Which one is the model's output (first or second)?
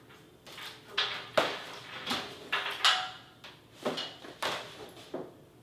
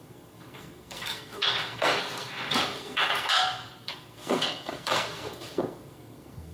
second